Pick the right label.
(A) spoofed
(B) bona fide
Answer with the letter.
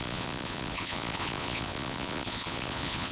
A